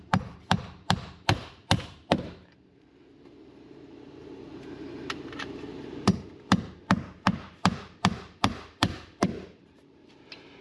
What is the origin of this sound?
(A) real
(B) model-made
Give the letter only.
B